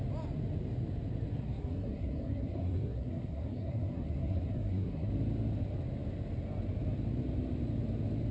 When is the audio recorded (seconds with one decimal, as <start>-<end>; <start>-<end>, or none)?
0.0-1.4; 5.1-8.3